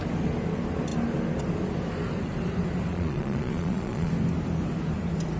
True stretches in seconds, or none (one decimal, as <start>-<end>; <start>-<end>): 0.0-2.9; 4.1-5.4